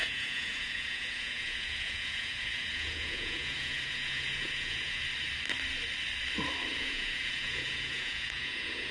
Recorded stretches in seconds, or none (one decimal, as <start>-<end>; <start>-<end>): 5.0-6.7